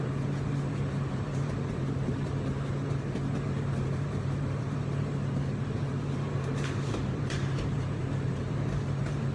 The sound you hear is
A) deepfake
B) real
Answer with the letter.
A